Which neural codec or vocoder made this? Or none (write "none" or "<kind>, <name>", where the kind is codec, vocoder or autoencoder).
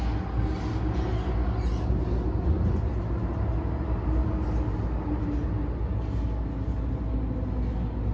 none